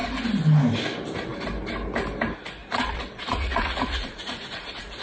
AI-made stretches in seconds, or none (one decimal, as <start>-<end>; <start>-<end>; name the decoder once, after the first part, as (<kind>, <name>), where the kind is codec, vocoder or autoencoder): 2.6-5.0 (vocoder, Vocos)